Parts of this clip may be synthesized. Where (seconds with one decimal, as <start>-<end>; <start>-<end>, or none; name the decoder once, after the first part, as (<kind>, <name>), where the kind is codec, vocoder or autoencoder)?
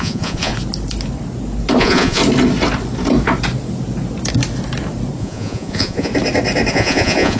0.0-0.5 (vocoder, Vocos); 1.8-2.2; 5.2-6.1; 6.7-7.4